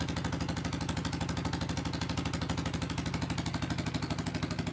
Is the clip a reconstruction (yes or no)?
no